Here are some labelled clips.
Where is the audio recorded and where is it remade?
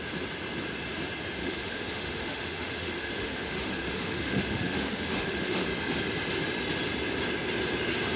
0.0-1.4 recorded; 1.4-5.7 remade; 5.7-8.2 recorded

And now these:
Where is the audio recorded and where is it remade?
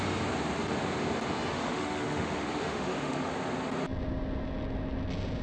0.0-1.5 recorded; 1.5-3.3 remade; 3.3-5.4 recorded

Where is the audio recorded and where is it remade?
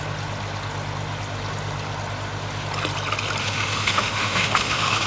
0.0-3.4 recorded; 3.4-5.1 remade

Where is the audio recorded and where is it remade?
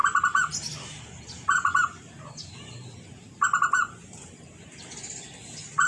0.0-5.9 recorded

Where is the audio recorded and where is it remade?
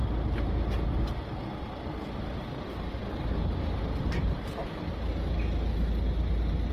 0.0-6.7 recorded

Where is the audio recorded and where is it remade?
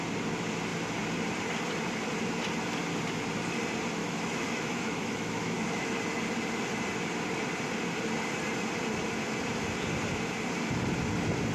0.0-4.0 recorded; 4.0-6.0 remade; 6.0-11.5 recorded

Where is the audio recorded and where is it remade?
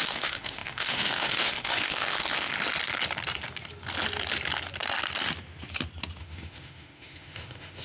0.0-2.5 remade; 2.5-6.2 recorded; 6.2-7.8 remade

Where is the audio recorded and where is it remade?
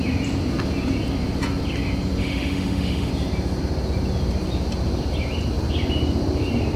0.0-2.2 recorded; 2.2-3.1 remade; 3.1-6.8 recorded